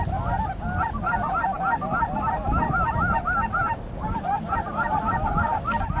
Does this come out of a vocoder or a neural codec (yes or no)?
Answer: yes